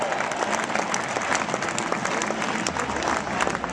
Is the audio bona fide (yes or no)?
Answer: yes